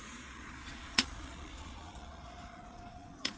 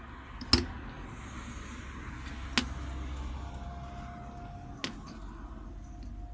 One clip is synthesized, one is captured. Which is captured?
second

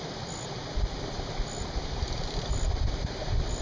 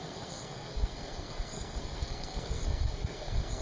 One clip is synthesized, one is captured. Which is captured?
first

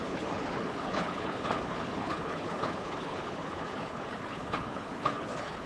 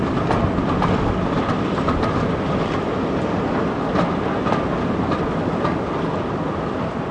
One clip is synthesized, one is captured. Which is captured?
second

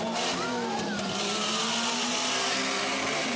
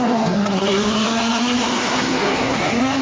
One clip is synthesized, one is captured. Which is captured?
first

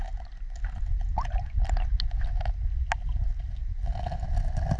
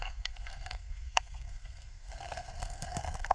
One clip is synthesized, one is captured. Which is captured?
first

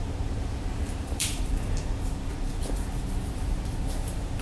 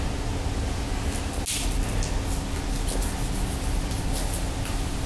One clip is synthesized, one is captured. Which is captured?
second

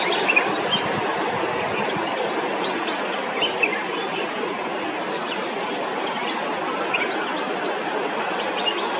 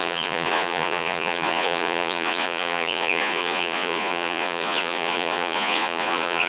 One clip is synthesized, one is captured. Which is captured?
first